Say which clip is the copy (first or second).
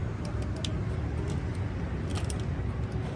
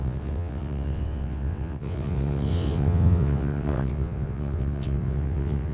second